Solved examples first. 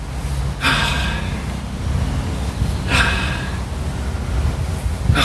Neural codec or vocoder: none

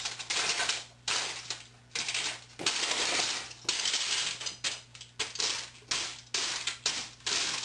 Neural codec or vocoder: none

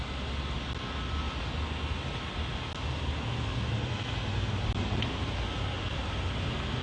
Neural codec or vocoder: none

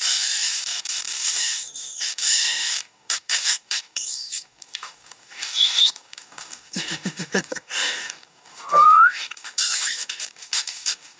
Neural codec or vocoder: codec, DAC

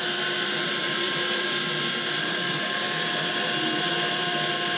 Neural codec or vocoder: vocoder, BigVGAN v2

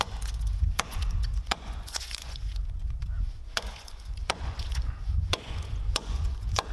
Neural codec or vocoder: vocoder, Vocos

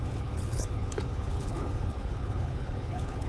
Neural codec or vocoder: codec, HILCodec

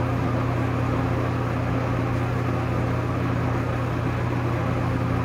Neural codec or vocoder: none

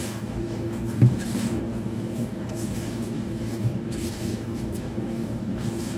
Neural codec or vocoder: codec, DAC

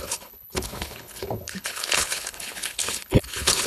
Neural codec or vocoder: codec, HILCodec